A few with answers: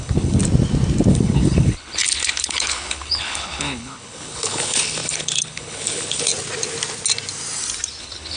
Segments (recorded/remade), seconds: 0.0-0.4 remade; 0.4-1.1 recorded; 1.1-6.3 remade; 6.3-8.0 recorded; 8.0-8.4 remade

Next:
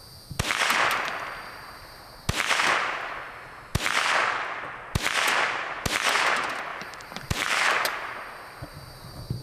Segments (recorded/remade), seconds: 0.0-6.7 recorded; 6.7-7.7 remade; 7.7-9.4 recorded

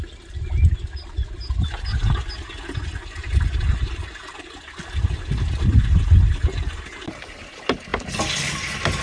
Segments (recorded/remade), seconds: 0.0-9.0 recorded

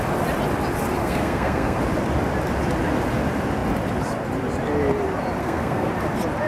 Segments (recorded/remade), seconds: 0.0-1.0 recorded; 1.0-1.8 remade; 1.8-5.4 recorded; 5.4-5.9 remade; 5.9-6.5 recorded